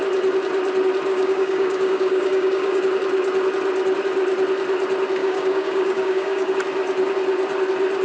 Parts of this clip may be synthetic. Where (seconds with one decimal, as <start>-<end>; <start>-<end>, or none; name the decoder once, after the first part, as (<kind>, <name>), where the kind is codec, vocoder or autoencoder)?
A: 1.1-2.8 (codec, DAC); 5.2-6.5